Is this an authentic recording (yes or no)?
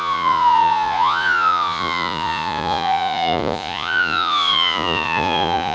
no